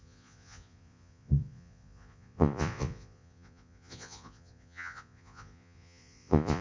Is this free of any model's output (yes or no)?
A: no